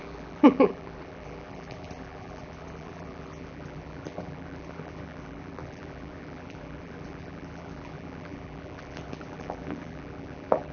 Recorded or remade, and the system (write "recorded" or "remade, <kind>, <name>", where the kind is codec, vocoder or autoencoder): remade, vocoder, BigVGAN v2